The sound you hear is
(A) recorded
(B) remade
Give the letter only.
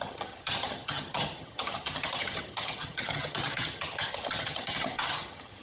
B